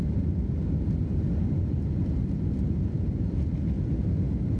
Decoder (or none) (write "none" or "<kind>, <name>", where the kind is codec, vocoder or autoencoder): none